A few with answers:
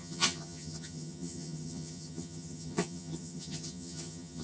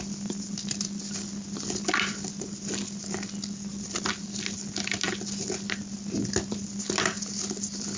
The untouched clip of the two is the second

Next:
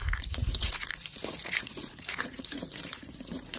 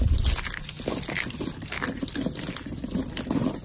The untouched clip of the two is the second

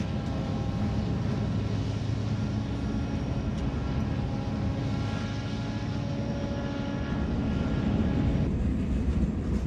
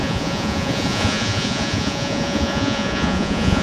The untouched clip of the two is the first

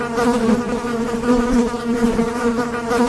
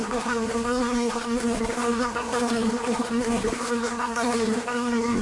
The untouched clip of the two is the first